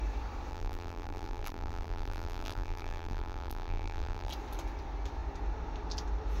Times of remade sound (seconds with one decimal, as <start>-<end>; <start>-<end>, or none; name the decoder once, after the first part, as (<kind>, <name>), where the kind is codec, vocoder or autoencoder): 0.5-4.3 (vocoder, BigVGAN v2)